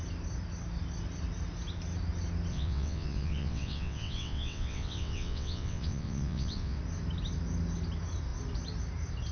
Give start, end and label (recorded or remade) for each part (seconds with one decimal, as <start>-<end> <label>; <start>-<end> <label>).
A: 0.0-2.5 recorded; 2.5-6.8 remade; 6.8-9.3 recorded